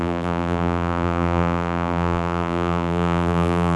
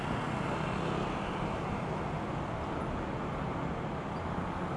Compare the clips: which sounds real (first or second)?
second